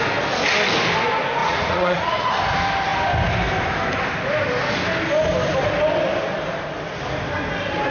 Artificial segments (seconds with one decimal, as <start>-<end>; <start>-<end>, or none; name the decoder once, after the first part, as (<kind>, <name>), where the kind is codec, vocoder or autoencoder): 1.4-2.3 (vocoder, Vocos)